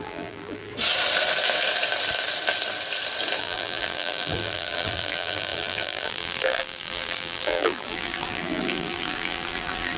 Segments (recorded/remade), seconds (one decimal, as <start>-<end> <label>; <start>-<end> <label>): 0.0-0.7 remade; 0.7-3.4 recorded; 3.4-10.0 remade